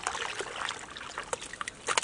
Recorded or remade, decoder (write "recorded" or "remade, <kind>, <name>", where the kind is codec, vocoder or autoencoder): recorded